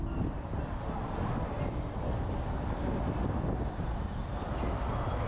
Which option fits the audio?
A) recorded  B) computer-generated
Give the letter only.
A